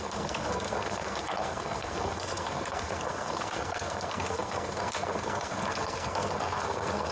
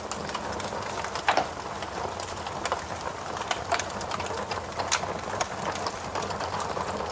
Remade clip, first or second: first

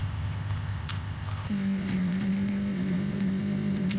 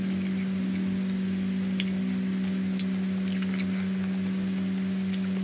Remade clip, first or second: first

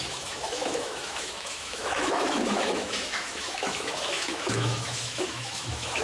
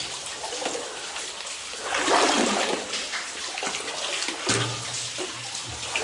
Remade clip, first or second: first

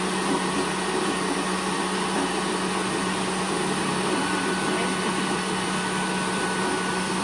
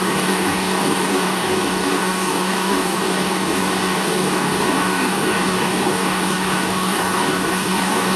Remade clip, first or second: second